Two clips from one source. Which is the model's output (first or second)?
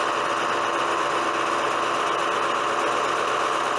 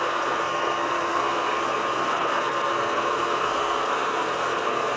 second